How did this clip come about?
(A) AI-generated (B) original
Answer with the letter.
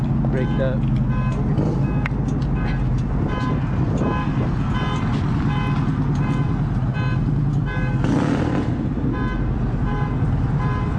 B